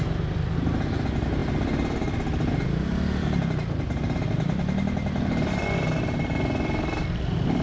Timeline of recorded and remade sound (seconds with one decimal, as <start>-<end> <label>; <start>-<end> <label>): 0.0-7.6 recorded